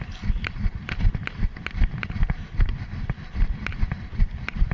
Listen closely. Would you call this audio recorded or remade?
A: recorded